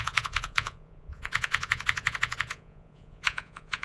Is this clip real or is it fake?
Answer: fake